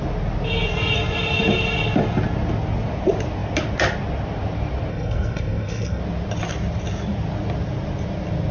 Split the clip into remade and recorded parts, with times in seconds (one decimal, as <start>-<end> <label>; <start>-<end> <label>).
0.0-4.9 recorded; 4.9-6.0 remade; 6.0-8.5 recorded